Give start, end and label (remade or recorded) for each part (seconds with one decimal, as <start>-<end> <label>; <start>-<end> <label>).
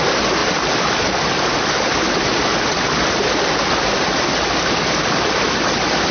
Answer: 0.0-6.1 recorded